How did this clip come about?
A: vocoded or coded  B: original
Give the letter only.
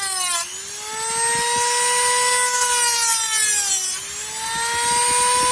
B